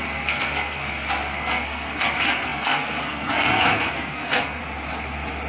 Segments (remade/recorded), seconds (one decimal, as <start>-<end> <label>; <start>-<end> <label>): 0.0-4.6 remade; 4.6-5.5 recorded